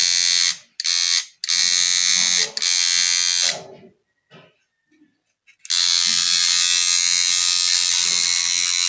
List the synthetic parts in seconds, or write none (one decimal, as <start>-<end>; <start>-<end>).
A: none